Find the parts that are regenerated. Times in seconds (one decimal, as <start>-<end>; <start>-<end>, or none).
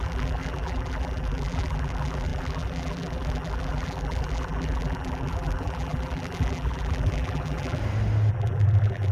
0.0-7.8; 8.3-9.1